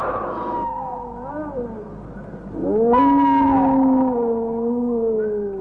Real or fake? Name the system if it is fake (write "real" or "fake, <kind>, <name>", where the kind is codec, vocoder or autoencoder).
real